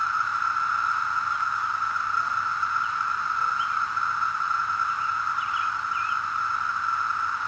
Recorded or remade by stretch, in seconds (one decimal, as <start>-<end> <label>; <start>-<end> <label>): 0.0-7.5 recorded